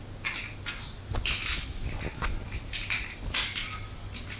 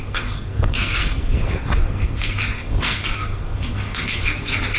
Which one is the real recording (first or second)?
first